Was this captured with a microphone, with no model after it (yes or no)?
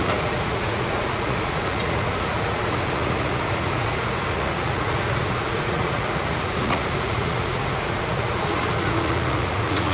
no